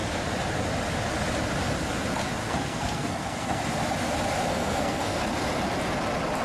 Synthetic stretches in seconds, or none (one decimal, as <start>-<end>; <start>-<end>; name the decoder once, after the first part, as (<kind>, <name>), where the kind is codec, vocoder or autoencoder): 2.4-3.6 (codec, SNAC); 4.5-5.2